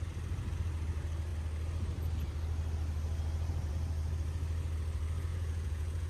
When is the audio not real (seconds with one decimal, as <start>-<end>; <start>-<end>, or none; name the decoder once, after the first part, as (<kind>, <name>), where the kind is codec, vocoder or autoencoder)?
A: 5.3-6.1 (vocoder, Vocos)